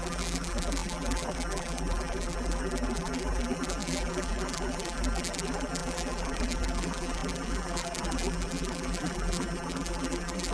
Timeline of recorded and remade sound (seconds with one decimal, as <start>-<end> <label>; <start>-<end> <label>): 0.0-10.5 remade